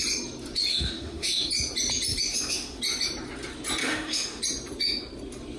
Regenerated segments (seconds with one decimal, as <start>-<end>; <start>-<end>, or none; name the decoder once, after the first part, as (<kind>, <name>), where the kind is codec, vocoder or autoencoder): 0.7-1.5 (autoencoder, DAC-VAE); 2.3-2.8; 3.8-4.4